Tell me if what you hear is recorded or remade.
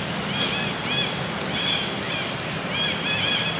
recorded